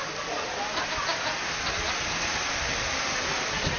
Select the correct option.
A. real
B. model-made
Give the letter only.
B